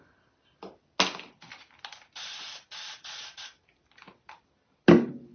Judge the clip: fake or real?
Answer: real